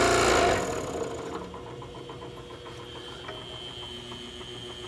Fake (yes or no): no